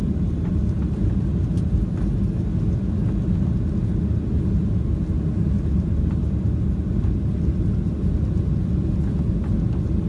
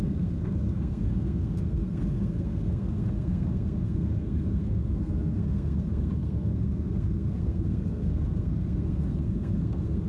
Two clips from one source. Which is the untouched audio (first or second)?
first